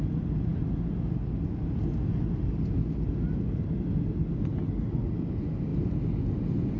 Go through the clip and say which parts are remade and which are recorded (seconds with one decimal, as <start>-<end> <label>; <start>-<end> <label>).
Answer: 0.0-6.8 recorded